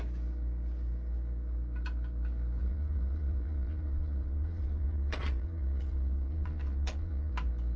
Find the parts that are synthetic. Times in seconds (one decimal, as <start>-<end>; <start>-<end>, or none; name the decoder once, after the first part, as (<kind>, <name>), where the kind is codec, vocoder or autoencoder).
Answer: 2.6-7.3 (vocoder, Vocos)